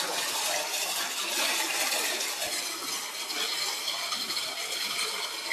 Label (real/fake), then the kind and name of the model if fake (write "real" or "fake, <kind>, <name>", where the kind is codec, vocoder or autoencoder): real